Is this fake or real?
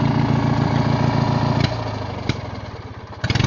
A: real